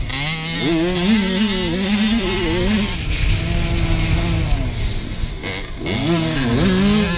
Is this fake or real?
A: real